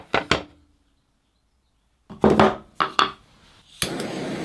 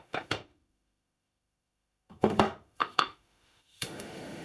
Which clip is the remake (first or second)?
second